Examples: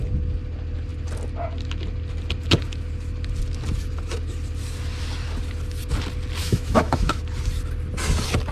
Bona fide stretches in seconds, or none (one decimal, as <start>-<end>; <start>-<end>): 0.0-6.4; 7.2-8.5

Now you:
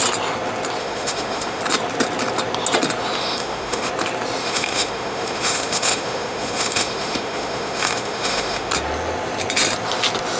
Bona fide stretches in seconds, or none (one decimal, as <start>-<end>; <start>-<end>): 0.0-0.8; 1.6-3.2; 3.9-4.4; 8.7-10.4

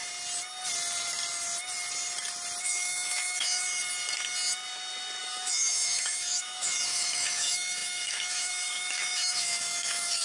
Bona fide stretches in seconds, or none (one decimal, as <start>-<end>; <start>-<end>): 0.0-2.6; 3.8-5.2

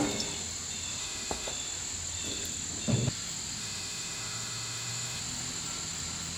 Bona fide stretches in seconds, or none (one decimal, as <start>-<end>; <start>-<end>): 0.0-1.0; 1.5-3.6; 5.2-6.4